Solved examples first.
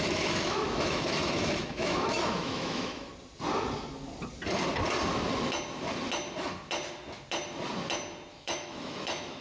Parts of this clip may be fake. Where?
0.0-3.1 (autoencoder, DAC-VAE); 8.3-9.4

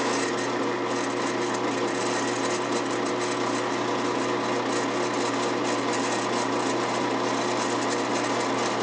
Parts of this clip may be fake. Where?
none

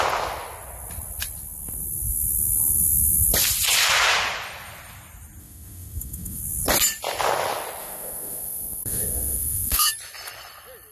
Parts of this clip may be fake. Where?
5.4-6.4 (autoencoder, DAC-VAE); 7.8-9.9